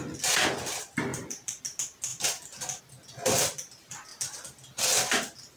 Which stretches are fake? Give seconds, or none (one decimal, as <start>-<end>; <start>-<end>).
1.1-1.6